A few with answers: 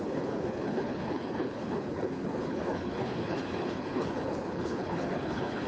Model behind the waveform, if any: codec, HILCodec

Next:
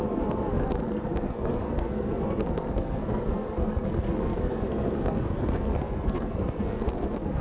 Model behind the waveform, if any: codec, SNAC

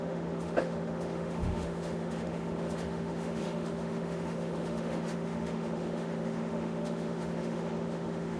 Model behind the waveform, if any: autoencoder, DAC-VAE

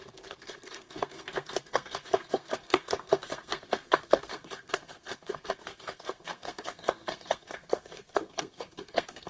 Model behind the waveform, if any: codec, SNAC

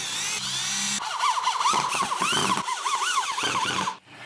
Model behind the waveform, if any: none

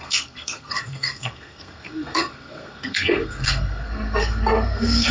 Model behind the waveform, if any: codec, SNAC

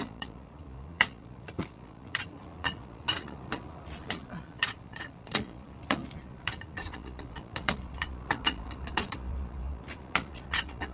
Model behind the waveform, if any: vocoder, Vocos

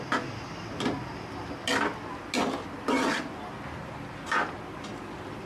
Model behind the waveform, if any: none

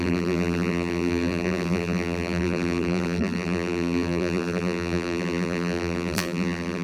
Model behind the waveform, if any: vocoder, BigVGAN v2